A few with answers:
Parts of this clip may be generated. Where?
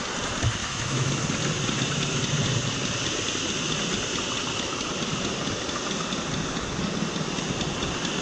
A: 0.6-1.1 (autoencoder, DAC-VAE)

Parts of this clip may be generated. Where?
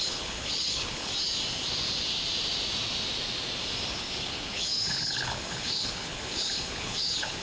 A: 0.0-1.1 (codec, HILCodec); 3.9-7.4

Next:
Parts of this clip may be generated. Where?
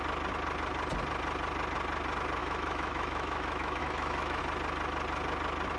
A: 2.4-4.4 (autoencoder, DAC-VAE)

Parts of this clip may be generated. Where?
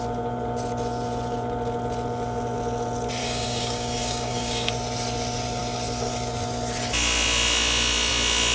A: 3.2-4.7 (codec, DAC)